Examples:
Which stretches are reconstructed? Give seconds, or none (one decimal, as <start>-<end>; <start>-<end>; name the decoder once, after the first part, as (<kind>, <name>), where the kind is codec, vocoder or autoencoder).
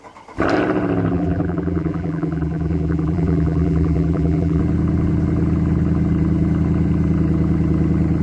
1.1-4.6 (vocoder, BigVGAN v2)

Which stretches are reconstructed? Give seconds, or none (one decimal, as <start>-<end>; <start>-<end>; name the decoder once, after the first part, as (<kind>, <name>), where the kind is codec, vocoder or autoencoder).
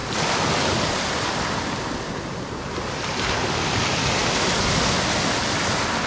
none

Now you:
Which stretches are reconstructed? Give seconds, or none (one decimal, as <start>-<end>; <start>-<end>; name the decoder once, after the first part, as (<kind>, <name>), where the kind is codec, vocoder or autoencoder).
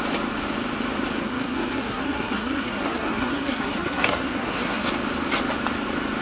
1.2-4.9 (codec, SNAC)